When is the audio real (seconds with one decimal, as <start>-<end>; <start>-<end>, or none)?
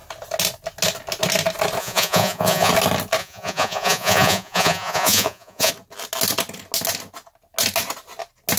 0.0-1.8; 2.7-3.2; 5.7-8.6